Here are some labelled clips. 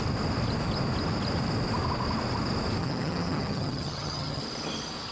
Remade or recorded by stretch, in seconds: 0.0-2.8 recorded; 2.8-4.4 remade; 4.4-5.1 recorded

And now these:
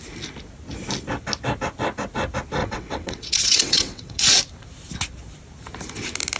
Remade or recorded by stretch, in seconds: 0.0-2.6 recorded; 2.6-4.3 remade; 4.3-6.4 recorded